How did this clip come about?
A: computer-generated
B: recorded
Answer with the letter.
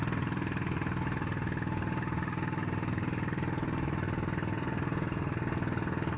B